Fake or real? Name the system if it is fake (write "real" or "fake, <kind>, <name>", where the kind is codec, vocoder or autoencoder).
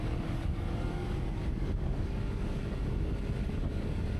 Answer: fake, codec, DAC